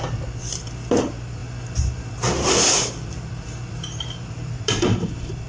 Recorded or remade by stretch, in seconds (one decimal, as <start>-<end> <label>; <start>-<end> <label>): 0.0-5.5 remade